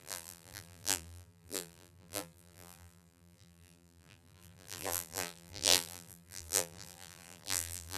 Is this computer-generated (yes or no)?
yes